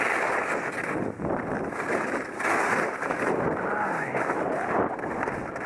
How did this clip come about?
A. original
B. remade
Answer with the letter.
A